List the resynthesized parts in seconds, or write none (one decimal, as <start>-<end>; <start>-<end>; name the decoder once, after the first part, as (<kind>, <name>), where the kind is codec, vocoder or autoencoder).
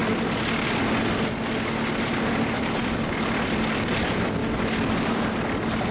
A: 1.9-4.4 (vocoder, BigVGAN v2)